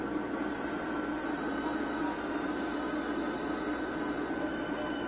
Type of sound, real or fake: real